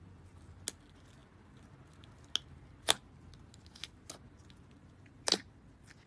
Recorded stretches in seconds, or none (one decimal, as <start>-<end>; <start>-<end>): 0.0-6.1